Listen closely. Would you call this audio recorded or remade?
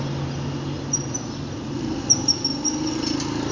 recorded